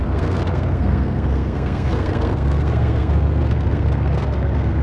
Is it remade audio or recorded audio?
remade